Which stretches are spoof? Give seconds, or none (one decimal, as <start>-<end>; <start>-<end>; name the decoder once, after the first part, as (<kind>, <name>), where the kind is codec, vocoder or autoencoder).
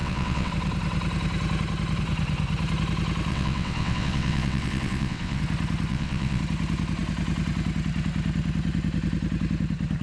0.0-0.5 (vocoder, WaveNeXt); 3.3-5.4; 5.9-6.4